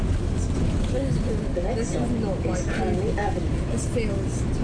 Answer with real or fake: real